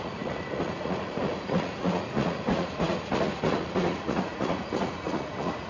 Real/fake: fake